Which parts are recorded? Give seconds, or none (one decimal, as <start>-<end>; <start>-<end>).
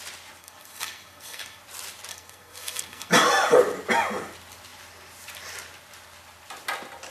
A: 0.0-0.4; 1.6-2.1; 3.1-7.1